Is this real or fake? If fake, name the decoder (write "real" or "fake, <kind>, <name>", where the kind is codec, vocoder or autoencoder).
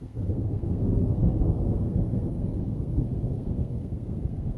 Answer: fake, codec, SNAC